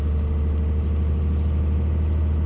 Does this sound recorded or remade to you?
recorded